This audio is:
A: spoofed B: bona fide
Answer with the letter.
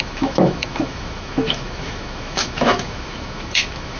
A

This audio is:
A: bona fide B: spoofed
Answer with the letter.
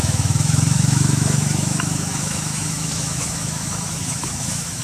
B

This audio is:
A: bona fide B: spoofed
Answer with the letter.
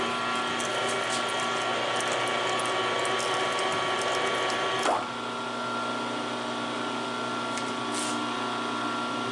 A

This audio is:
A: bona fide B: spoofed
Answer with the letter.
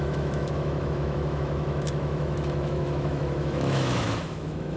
B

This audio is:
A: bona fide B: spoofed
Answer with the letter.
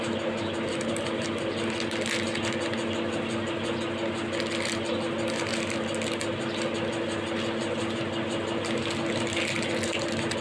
A